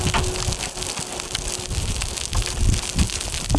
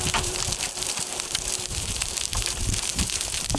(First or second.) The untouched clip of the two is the first